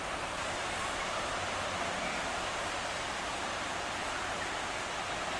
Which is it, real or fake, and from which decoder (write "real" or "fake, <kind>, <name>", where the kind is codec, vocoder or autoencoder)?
real